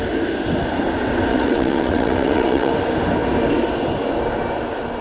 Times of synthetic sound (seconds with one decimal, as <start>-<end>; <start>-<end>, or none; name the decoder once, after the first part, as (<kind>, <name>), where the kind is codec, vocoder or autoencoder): 1.3-2.7 (vocoder, WaveNeXt)